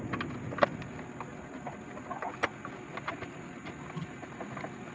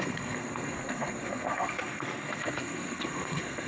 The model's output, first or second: second